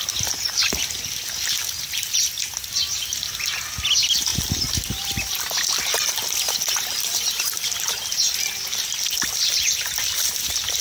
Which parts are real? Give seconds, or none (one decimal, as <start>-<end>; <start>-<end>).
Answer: 0.0-10.8